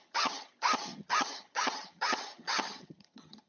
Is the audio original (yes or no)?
no